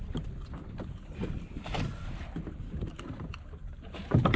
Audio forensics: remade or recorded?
recorded